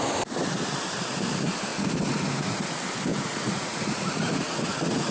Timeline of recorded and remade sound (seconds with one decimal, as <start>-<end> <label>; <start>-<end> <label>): 0.0-1.7 recorded; 1.7-2.6 remade; 2.6-3.1 recorded; 3.1-5.1 remade